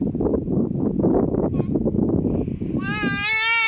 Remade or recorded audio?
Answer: recorded